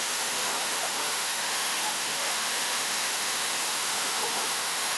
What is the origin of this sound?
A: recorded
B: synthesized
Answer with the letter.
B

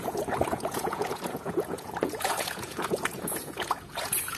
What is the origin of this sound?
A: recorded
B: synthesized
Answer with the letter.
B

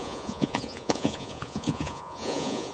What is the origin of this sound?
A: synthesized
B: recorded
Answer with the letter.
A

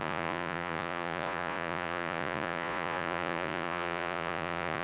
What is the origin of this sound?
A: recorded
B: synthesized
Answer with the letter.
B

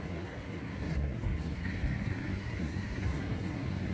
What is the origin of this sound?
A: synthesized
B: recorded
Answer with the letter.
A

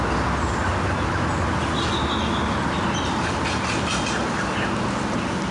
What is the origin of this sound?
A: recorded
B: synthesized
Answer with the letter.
A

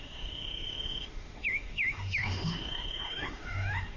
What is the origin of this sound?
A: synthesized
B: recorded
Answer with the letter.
A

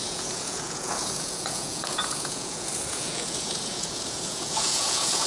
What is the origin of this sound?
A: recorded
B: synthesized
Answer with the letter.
B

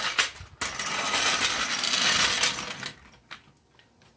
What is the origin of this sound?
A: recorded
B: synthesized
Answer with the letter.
A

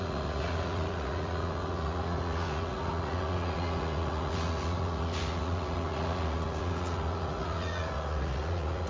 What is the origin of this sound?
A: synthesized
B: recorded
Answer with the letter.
A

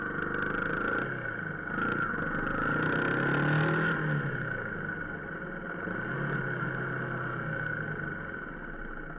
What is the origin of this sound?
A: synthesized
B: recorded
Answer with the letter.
B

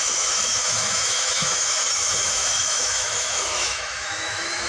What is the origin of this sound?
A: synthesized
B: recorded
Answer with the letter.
A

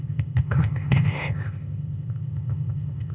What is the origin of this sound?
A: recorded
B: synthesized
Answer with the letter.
B